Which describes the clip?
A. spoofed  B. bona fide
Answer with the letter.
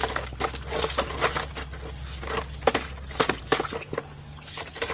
B